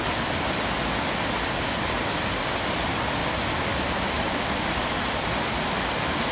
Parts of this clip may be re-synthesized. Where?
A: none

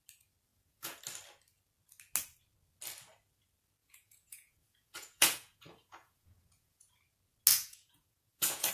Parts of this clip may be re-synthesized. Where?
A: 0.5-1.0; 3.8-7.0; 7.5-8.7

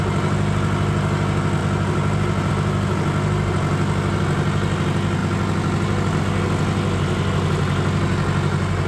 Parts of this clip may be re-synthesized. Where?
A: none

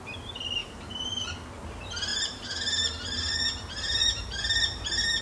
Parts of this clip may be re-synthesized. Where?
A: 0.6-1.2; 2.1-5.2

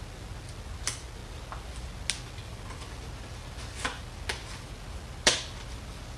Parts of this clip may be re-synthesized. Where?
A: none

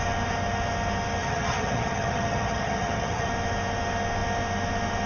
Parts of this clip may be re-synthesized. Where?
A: 1.2-3.3